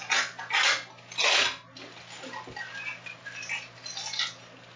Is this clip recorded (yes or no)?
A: yes